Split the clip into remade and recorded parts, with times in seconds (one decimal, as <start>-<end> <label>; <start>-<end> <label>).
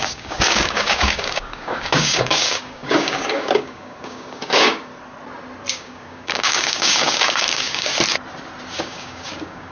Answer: 0.0-4.9 remade; 4.9-5.7 recorded; 5.7-7.9 remade; 7.9-8.8 recorded; 8.8-9.7 remade